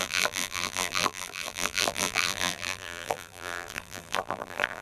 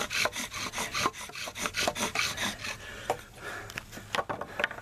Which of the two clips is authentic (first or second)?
second